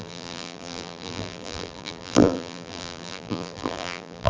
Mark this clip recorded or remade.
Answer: remade